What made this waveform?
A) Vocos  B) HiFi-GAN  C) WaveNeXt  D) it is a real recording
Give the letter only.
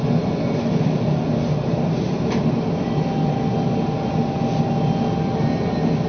D